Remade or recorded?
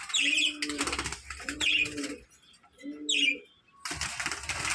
recorded